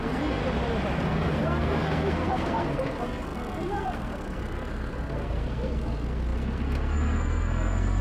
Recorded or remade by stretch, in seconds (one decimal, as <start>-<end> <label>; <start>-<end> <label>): 0.0-0.4 remade; 0.4-1.0 recorded; 1.0-8.0 remade